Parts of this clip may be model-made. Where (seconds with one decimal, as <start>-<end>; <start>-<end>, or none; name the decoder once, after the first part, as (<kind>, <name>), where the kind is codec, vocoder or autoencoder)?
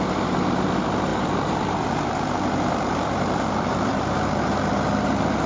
1.1-4.4 (vocoder, BigVGAN v2)